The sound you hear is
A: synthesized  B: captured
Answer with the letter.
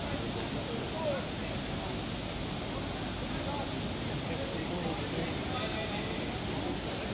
B